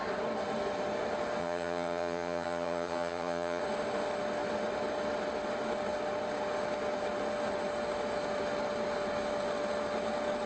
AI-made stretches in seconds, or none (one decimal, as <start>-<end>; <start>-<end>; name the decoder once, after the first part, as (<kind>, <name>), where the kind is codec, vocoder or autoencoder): 1.4-3.6 (vocoder, HiFi-GAN)